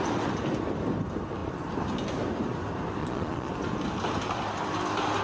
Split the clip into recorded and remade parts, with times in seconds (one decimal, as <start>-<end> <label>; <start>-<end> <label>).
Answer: 0.0-3.0 recorded; 3.0-3.5 remade; 3.5-5.2 recorded